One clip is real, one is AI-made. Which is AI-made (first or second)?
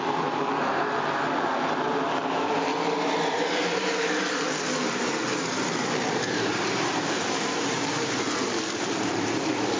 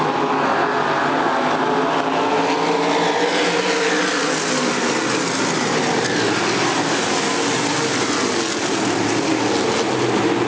first